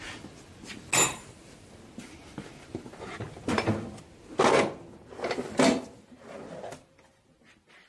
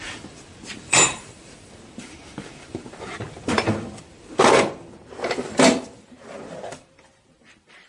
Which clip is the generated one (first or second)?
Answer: second